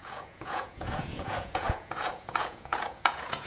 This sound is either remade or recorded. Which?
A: remade